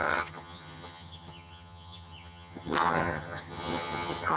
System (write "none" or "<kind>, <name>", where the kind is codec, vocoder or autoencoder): vocoder, HiFi-GAN